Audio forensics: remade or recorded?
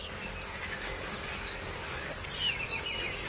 recorded